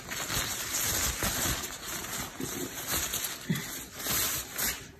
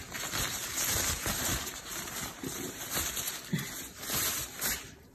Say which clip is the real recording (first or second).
first